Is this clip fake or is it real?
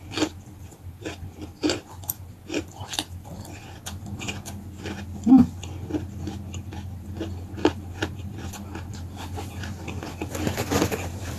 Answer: real